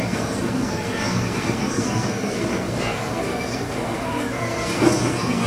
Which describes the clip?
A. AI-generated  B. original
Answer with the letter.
A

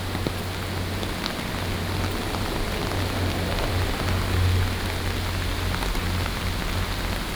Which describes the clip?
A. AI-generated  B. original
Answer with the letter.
B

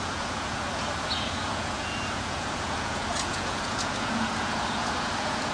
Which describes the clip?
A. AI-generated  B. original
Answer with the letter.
A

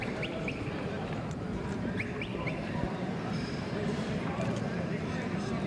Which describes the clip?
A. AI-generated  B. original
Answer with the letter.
A